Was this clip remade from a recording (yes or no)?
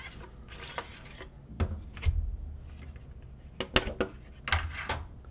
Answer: no